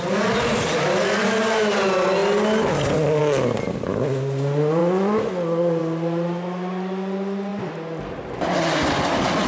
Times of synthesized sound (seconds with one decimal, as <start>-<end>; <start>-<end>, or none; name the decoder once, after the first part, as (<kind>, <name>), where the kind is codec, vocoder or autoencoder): none